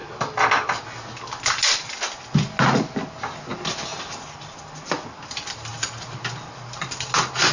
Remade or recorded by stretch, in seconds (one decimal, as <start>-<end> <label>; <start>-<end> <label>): 0.0-7.5 recorded